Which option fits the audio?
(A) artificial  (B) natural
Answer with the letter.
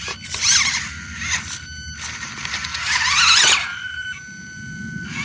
B